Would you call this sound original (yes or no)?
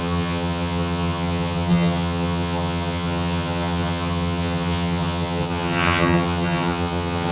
no